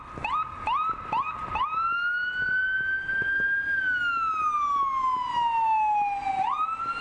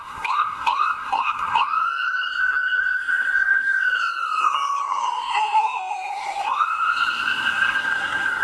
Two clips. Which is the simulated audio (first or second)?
second